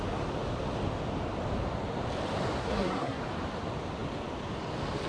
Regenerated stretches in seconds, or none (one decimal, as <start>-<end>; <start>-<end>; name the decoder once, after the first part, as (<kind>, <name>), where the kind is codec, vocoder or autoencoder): 2.6-3.2 (codec, SNAC)